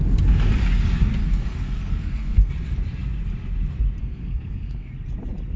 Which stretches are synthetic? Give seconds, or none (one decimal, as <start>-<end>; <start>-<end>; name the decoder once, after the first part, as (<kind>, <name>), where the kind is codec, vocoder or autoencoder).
1.2-2.5 (codec, SNAC); 4.0-4.9